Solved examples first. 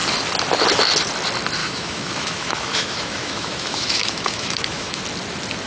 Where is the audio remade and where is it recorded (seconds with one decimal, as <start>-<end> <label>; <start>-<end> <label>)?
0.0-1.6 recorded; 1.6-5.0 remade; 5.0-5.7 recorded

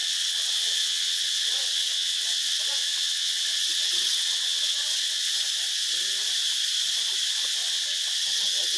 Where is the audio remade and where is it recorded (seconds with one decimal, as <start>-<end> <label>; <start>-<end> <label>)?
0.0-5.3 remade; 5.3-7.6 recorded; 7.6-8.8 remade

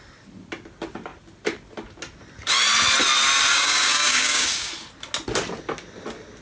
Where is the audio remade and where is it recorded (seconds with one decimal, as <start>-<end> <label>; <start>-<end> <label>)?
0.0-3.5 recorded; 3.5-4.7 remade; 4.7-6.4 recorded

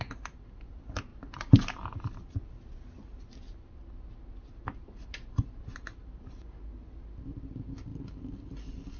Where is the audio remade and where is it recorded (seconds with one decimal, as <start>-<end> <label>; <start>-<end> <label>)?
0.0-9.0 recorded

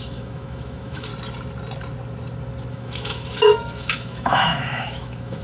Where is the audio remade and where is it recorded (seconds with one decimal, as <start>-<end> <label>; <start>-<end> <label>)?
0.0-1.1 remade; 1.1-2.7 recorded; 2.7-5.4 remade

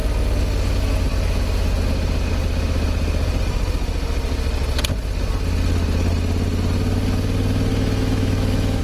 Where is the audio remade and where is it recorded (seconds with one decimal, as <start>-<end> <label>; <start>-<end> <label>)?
0.0-7.7 recorded; 7.7-8.8 remade